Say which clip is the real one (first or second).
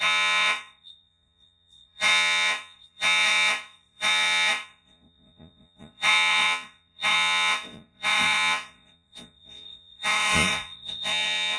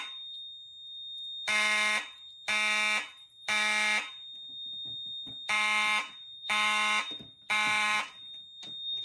second